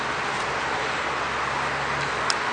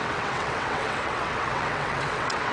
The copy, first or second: second